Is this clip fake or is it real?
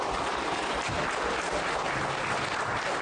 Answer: real